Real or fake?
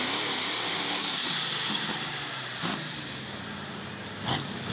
real